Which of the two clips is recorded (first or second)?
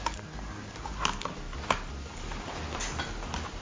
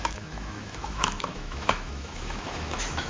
first